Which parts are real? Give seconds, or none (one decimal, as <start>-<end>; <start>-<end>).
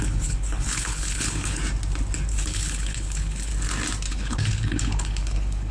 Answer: 1.6-2.3; 3.5-4.1